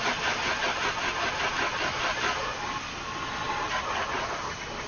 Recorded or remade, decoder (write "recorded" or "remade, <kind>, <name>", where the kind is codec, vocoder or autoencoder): recorded